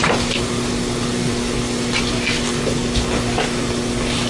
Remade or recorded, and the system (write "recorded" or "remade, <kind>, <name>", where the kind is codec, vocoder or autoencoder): recorded